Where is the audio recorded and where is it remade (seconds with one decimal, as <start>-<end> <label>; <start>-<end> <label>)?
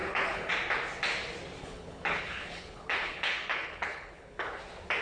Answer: 0.0-0.5 remade; 0.5-1.6 recorded; 1.6-4.6 remade; 4.6-5.0 recorded